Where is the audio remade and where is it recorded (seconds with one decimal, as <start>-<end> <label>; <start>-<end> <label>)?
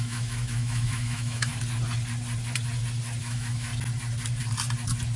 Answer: 0.0-1.5 remade; 1.5-3.2 recorded; 3.2-3.7 remade; 3.7-5.2 recorded